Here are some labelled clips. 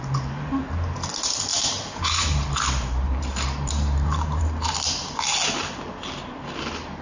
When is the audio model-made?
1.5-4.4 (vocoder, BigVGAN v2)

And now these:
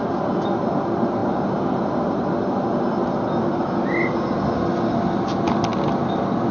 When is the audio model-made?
1.2-2.3 (vocoder, BigVGAN v2)

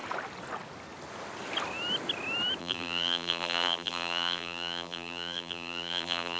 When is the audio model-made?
2.6-6.4 (vocoder, BigVGAN v2)

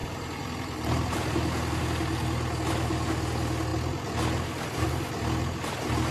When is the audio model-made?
0.0-1.8 (vocoder, BigVGAN v2)

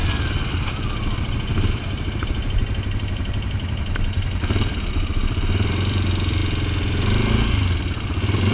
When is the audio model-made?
1.7-6.4 (vocoder, BigVGAN v2)